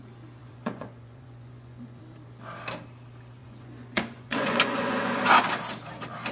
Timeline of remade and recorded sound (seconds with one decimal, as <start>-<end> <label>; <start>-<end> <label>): 0.0-0.4 recorded; 0.4-2.0 remade; 2.0-3.4 recorded; 3.4-5.2 remade; 5.2-6.3 recorded